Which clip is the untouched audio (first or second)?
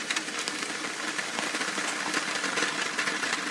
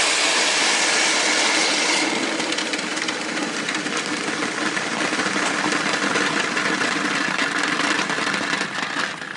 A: first